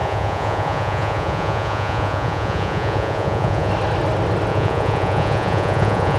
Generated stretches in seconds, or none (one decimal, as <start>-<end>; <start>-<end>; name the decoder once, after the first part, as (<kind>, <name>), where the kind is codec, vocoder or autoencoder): 0.0-3.7 (vocoder, Vocos); 4.5-6.2